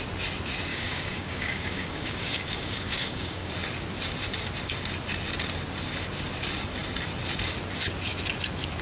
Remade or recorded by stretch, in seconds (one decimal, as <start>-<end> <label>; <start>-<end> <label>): 0.0-0.7 recorded; 0.7-3.5 remade; 3.5-8.8 recorded